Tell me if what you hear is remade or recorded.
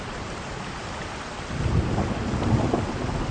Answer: recorded